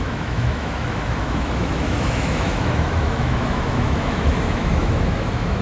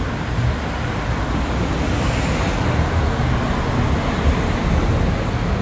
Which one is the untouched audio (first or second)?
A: second